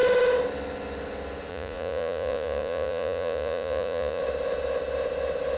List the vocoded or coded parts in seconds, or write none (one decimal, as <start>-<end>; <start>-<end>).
1.5-4.2